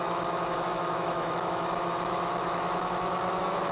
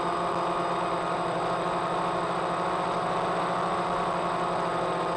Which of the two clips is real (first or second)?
second